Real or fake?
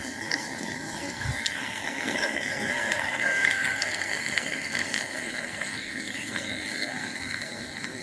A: fake